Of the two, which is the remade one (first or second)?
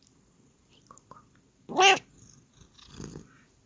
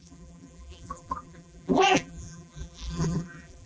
second